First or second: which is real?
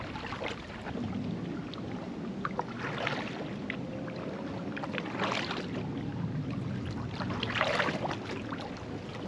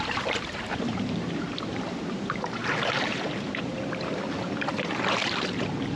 first